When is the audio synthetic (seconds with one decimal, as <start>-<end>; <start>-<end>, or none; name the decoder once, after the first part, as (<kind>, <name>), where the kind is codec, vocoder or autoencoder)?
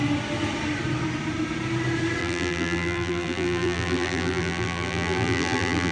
2.2-5.9 (vocoder, BigVGAN v2)